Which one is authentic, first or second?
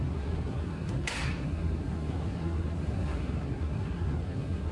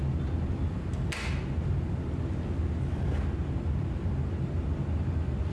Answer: second